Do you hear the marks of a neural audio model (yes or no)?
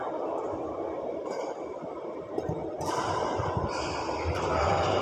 yes